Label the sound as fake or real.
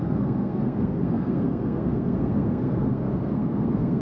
fake